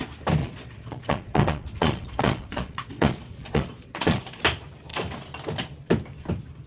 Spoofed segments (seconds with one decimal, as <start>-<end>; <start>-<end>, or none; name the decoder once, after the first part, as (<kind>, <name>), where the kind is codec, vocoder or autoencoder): 0.4-4.4 (vocoder, Vocos)